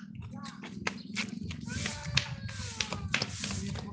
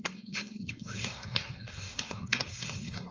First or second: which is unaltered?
first